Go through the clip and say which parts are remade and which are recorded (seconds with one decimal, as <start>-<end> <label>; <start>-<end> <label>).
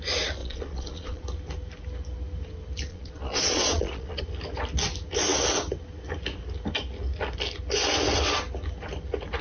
0.0-0.4 recorded; 0.4-1.2 remade; 1.2-2.9 recorded; 2.9-4.2 remade; 4.2-9.4 recorded